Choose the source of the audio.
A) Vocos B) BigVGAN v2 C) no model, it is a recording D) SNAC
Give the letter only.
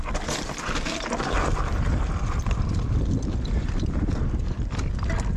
C